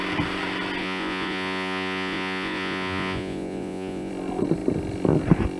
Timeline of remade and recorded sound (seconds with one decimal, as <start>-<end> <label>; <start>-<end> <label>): 0.0-0.8 recorded; 0.8-4.1 remade; 4.1-5.6 recorded